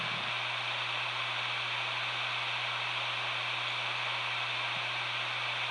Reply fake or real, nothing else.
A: real